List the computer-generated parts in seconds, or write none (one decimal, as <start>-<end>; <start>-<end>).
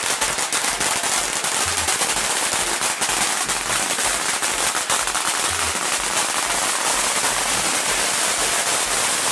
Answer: none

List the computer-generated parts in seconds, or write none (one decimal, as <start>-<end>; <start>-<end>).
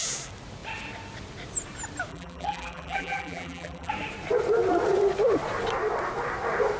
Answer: 2.1-3.9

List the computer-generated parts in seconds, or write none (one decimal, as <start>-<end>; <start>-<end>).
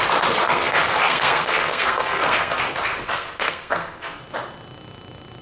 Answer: 0.4-2.6; 3.0-4.2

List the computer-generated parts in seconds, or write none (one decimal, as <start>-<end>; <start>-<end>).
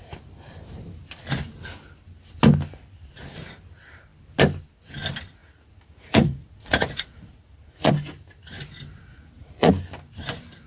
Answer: 5.4-7.9; 9.1-9.7